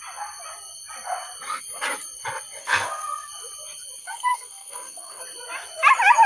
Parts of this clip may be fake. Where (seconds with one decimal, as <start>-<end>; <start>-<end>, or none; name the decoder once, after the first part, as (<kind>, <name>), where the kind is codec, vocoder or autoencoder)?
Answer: 2.6-3.3 (codec, SNAC); 4.0-5.2